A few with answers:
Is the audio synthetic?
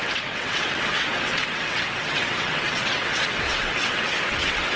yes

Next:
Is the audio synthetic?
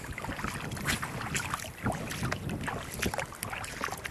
no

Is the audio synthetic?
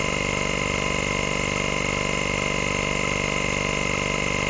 no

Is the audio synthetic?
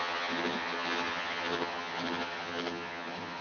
yes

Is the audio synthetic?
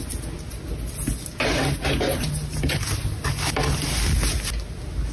no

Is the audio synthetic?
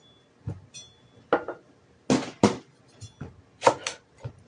no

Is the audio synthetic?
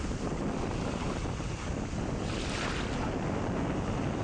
no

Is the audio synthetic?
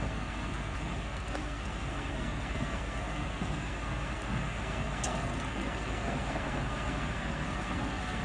yes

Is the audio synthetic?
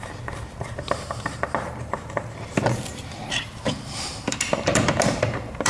yes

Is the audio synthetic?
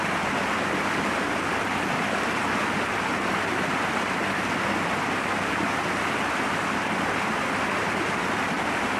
no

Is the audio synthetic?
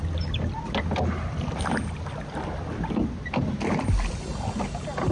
no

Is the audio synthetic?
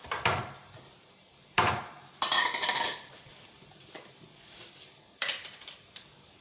yes